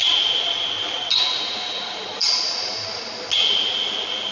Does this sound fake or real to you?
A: real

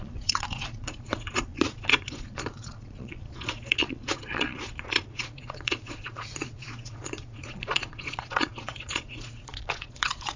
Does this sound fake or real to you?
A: fake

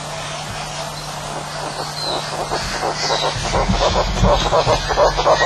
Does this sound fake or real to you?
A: real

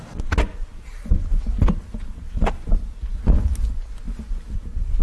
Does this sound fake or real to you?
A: real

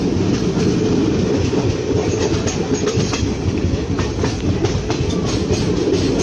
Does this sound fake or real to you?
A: real